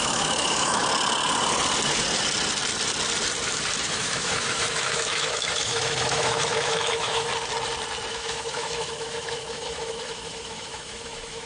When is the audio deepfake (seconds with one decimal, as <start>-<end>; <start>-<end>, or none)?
0.0-0.8; 3.9-7.3; 8.1-11.5